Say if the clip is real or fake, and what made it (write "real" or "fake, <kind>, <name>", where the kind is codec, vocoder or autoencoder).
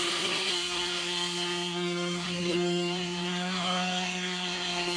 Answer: fake, codec, SNAC